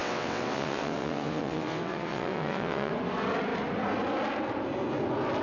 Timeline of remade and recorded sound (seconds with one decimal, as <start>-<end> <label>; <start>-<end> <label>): 0.0-2.9 remade; 2.9-5.4 recorded